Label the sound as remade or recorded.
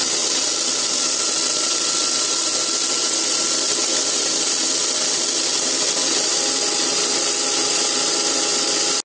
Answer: recorded